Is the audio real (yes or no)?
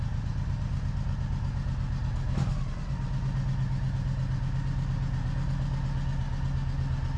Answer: yes